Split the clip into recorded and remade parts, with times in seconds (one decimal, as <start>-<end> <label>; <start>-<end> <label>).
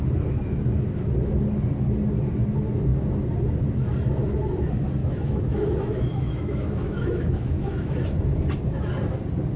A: 0.0-5.0 recorded; 5.0-8.0 remade; 8.0-9.6 recorded